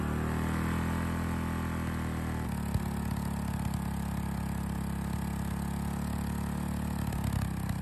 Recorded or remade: recorded